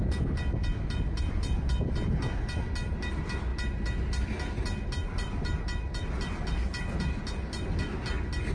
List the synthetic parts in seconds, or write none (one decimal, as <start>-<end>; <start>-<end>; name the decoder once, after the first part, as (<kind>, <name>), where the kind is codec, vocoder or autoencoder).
none